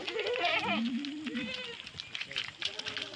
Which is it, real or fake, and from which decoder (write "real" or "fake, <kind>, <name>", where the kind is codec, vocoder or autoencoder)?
real